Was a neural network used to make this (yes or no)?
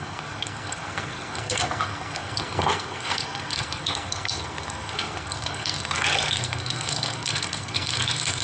yes